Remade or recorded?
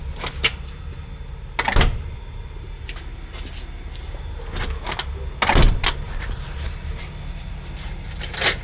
recorded